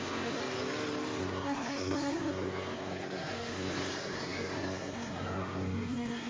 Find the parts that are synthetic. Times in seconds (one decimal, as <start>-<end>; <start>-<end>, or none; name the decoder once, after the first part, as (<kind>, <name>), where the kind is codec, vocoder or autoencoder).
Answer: 0.0-0.4 (codec, SNAC); 1.2-6.3